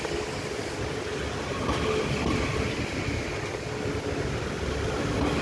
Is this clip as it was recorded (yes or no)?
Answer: yes